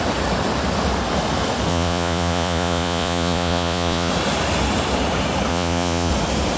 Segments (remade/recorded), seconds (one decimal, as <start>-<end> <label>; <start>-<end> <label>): 0.0-1.7 recorded; 1.7-4.1 remade; 4.1-5.5 recorded; 5.5-6.1 remade; 6.1-6.6 recorded